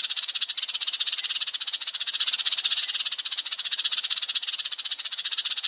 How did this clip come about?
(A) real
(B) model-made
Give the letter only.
B